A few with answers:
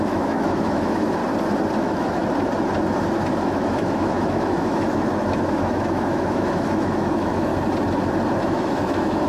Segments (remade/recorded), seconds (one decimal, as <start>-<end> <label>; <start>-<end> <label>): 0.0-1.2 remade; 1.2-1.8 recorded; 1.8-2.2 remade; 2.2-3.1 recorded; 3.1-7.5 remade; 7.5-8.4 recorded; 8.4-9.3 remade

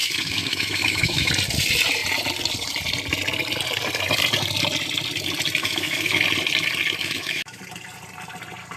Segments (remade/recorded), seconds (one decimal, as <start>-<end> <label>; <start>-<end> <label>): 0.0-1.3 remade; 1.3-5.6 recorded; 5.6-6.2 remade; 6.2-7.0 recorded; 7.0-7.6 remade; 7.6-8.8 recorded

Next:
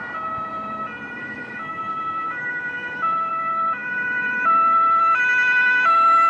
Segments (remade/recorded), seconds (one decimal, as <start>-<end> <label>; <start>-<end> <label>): 0.0-1.2 recorded; 1.2-3.3 remade; 3.3-6.3 recorded

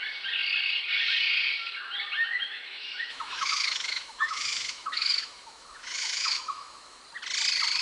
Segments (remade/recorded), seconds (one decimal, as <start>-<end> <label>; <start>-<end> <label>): 0.0-2.3 recorded; 2.3-7.0 remade; 7.0-7.8 recorded

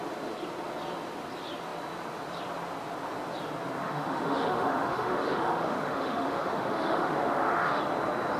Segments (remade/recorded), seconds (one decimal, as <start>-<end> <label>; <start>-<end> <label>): 0.0-3.8 recorded; 3.8-7.8 remade; 7.8-8.4 recorded

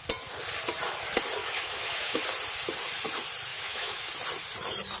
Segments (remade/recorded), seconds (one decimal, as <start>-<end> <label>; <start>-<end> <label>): 0.0-1.4 recorded; 1.4-2.2 remade; 2.2-3.5 recorded; 3.5-4.1 remade; 4.1-5.0 recorded